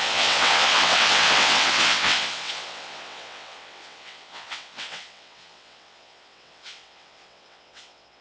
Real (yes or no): no